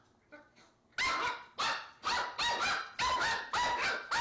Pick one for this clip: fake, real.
real